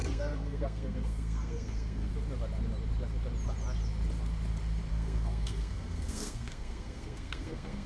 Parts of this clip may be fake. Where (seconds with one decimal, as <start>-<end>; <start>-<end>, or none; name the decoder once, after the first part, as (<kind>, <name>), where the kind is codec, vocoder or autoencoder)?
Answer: 0.0-2.1 (codec, SNAC); 4.9-7.9